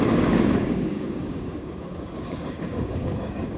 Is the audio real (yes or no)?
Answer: no